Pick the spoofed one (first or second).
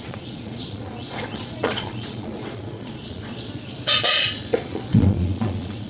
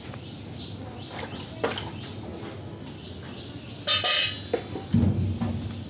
first